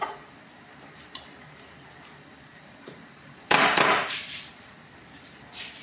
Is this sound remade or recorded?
remade